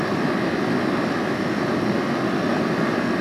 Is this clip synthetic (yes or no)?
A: no